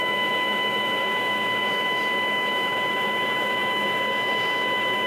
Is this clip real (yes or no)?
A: no